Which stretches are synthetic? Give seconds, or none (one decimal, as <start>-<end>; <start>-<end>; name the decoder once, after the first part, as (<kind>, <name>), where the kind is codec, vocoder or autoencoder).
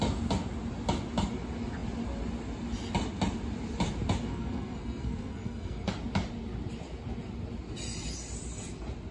4.3-5.9 (codec, SNAC)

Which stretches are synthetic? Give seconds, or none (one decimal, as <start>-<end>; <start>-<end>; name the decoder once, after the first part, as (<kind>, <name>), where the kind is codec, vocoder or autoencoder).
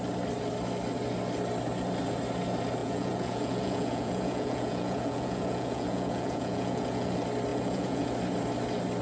2.8-7.1 (vocoder, Vocos); 7.5-8.1